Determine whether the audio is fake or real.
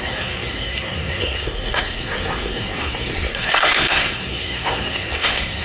fake